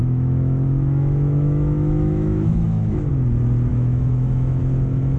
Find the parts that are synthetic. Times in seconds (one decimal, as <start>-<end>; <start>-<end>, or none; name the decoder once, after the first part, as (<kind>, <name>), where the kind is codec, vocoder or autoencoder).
0.0-3.1 (autoencoder, DAC-VAE); 3.7-4.6